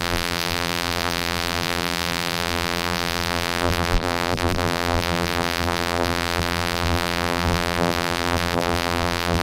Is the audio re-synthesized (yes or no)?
yes